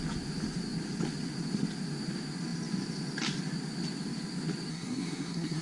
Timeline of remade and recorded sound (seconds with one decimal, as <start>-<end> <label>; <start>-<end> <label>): 0.0-4.7 recorded; 4.7-5.6 remade